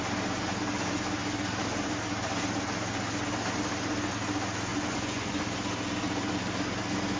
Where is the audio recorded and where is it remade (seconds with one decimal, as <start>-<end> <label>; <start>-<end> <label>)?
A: 0.0-4.7 recorded; 4.7-5.4 remade; 5.4-7.2 recorded

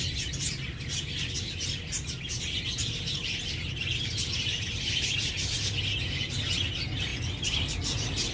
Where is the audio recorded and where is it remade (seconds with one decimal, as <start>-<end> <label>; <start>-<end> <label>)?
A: 0.0-3.8 recorded; 3.8-5.3 remade; 5.3-8.3 recorded

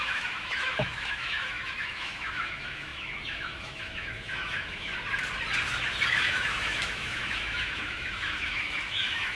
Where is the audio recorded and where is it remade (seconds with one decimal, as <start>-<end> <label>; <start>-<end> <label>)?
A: 0.0-4.9 remade; 4.9-6.1 recorded; 6.1-9.3 remade

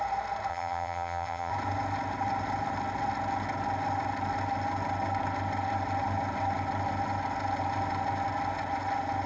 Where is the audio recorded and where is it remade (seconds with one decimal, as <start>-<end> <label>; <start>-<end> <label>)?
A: 0.0-0.5 recorded; 0.5-1.5 remade; 1.5-9.3 recorded

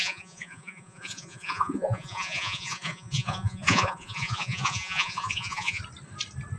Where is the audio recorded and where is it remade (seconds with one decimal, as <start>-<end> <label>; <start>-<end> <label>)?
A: 0.0-5.8 remade; 5.8-6.6 recorded